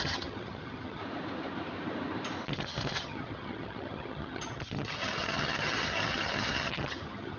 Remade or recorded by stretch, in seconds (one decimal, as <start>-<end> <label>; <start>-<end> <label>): 0.0-1.0 remade; 1.0-2.5 recorded; 2.5-7.4 remade